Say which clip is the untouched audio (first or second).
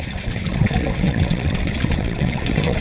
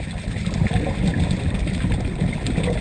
second